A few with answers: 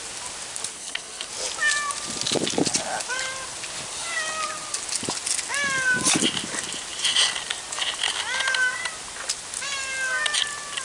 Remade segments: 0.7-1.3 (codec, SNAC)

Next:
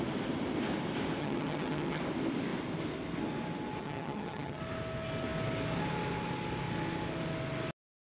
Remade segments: 1.2-2.0 (vocoder, HiFi-GAN); 3.8-4.6

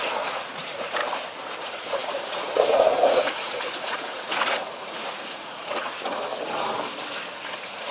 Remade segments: 0.0-1.0 (vocoder, Vocos); 1.6-6.3; 7.3-7.9

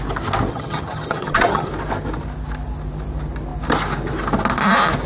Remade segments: 0.5-1.7 (vocoder, HiFi-GAN)

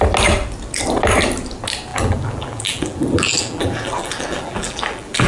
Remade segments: 1.9-5.3 (vocoder, BigVGAN v2)

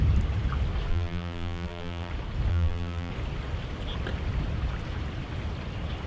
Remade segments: 0.9-2.1 (vocoder, BigVGAN v2); 2.5-3.1

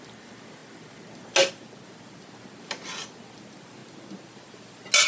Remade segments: none